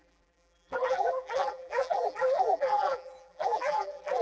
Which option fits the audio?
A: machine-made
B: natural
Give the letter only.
A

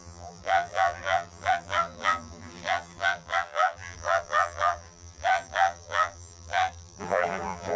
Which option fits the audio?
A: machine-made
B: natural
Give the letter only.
A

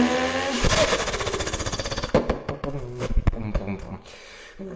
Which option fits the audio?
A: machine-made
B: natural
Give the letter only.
B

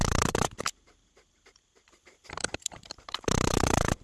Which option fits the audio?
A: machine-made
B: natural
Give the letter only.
A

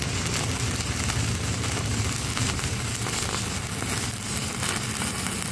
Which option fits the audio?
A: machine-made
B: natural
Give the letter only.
B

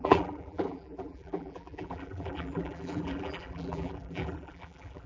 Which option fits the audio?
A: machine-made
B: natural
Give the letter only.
A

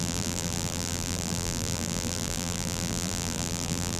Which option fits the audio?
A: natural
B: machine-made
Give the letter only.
B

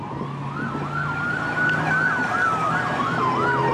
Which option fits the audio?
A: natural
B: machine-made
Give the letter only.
A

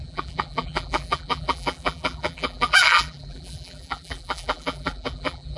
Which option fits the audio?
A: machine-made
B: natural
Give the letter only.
A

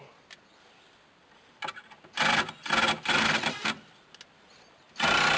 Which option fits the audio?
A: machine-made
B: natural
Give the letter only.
B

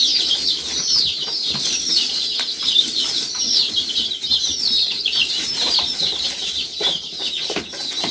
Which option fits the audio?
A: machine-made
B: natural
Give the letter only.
A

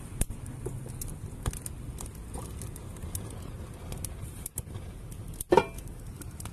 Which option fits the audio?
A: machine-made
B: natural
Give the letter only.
B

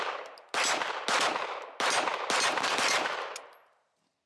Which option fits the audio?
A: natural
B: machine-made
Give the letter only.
A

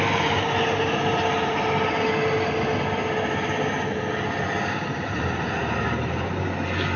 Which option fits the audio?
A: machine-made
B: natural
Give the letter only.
B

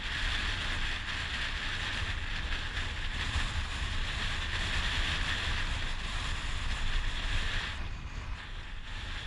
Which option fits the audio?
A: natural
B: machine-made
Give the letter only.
A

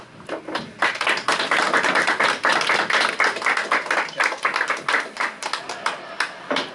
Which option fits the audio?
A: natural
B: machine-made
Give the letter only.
A